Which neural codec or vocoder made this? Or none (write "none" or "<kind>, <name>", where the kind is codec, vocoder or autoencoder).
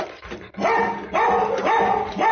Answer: none